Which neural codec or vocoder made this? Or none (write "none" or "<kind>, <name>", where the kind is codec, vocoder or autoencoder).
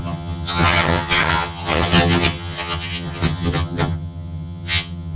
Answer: vocoder, HiFi-GAN